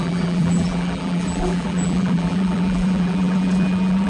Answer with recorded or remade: remade